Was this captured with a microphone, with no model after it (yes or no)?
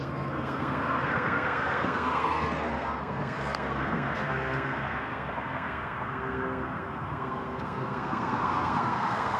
no